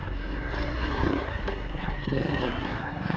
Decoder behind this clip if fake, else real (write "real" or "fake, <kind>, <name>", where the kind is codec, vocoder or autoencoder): fake, codec, SNAC